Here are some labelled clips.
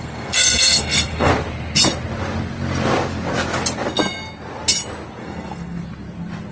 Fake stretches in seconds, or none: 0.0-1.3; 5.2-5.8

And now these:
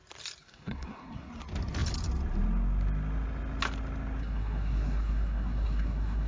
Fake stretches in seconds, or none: 0.4-1.3; 4.2-6.3